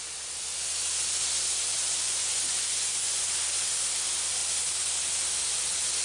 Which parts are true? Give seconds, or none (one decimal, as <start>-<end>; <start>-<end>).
0.0-1.7; 3.3-6.0